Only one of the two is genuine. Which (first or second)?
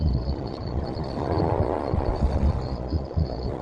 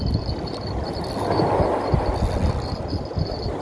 second